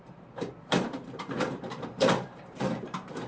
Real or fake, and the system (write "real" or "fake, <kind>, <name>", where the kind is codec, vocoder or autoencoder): fake, vocoder, BigVGAN v2